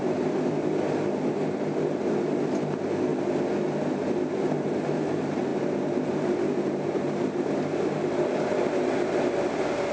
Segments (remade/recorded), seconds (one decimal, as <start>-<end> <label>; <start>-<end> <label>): 0.0-9.9 recorded

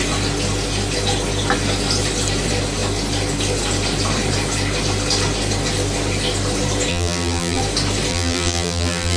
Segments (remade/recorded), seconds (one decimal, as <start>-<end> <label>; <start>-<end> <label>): 0.0-6.9 recorded; 6.9-7.6 remade; 7.6-8.1 recorded; 8.1-9.2 remade

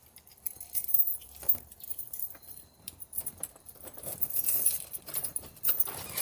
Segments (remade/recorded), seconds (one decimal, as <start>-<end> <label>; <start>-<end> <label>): 0.0-1.1 recorded; 1.1-4.8 remade; 4.8-6.2 recorded

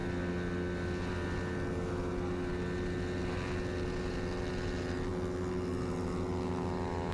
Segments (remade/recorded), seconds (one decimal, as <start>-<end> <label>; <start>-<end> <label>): 0.0-7.1 recorded

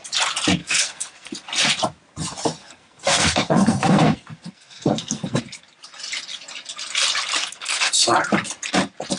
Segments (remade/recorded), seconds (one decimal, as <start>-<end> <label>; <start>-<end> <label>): 0.0-0.6 recorded; 0.6-1.3 remade; 1.3-2.6 recorded; 2.6-5.4 remade; 5.4-7.4 recorded; 7.4-7.9 remade; 7.9-9.2 recorded

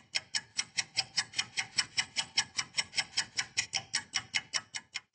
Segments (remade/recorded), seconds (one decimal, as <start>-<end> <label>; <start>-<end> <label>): 0.0-0.5 recorded; 0.5-3.6 remade; 3.6-5.1 recorded

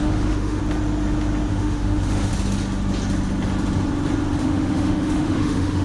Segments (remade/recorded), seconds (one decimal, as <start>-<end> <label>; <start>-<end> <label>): 0.0-0.6 remade; 0.6-1.5 recorded; 1.5-2.3 remade; 2.3-4.4 recorded; 4.4-5.8 remade